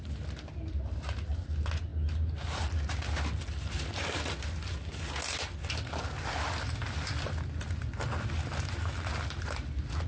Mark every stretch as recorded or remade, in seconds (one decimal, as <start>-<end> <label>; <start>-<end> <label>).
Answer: 0.0-10.1 recorded

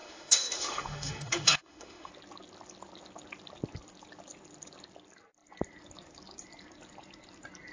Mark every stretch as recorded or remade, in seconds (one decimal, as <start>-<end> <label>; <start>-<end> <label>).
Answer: 0.0-2.1 remade; 2.1-7.7 recorded

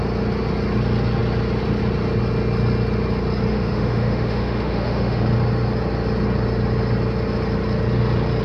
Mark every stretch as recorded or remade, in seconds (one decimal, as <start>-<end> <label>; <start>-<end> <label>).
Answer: 0.0-3.5 recorded; 3.5-5.2 remade; 5.2-8.4 recorded

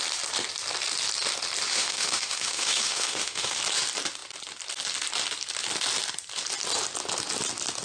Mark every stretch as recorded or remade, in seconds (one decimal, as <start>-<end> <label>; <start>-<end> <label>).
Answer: 0.0-1.7 recorded; 1.7-3.6 remade; 3.6-7.8 recorded

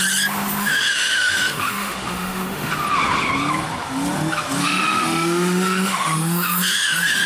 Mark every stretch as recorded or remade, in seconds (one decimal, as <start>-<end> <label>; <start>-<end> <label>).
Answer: 0.0-0.6 recorded; 0.6-2.7 remade; 2.7-4.6 recorded; 4.6-7.3 remade

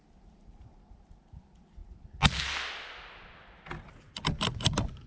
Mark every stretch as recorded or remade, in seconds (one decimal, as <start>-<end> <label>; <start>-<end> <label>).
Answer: 0.0-5.1 recorded

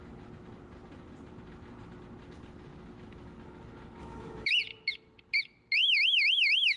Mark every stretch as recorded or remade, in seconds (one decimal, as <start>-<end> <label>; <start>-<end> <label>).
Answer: 0.0-4.0 recorded; 4.0-4.5 remade; 4.5-5.8 recorded; 5.8-6.8 remade

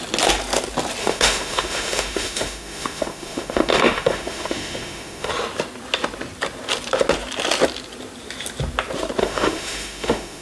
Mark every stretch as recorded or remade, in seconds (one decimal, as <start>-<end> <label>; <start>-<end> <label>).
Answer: 0.0-1.0 recorded; 1.0-5.3 remade; 5.3-9.2 recorded; 9.2-10.4 remade